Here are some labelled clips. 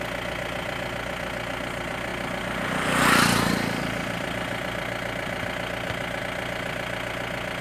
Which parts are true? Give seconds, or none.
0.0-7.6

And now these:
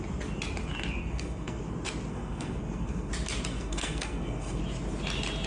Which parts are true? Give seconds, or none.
0.0-1.0; 1.6-2.1; 3.1-3.5; 4.6-5.5

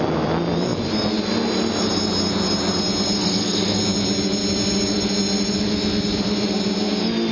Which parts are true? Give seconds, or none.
0.0-3.2; 3.8-7.3

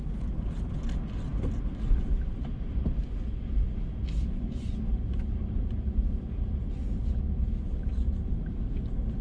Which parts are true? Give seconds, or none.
0.0-9.2

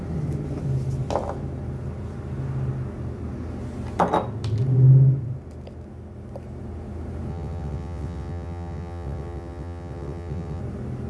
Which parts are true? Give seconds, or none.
0.0-7.3; 10.6-11.1